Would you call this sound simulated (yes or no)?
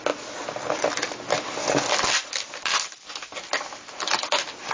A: no